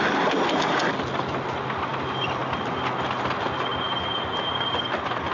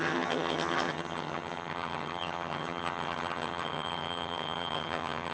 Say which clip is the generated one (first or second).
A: second